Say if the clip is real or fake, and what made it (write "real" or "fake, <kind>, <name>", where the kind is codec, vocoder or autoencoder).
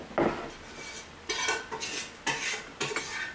real